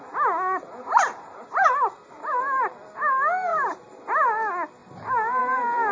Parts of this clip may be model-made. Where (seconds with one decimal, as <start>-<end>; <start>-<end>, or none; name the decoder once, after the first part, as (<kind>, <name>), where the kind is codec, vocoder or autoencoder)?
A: 0.9-2.4 (vocoder, BigVGAN v2); 3.5-4.1